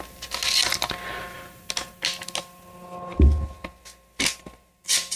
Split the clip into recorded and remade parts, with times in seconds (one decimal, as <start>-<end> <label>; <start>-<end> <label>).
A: 0.0-5.2 recorded